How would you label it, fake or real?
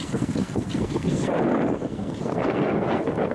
fake